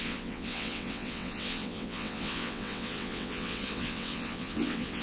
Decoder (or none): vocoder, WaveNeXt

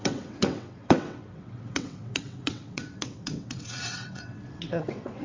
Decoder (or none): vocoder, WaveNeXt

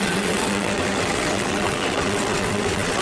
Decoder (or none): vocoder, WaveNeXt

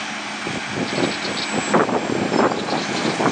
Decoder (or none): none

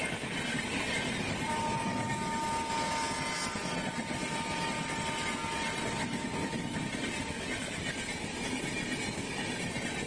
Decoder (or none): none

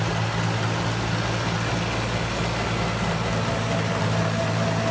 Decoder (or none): none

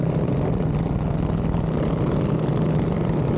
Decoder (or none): none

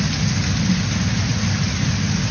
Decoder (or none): none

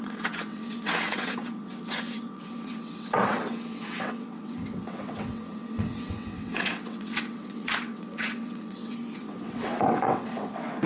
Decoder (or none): vocoder, WaveNeXt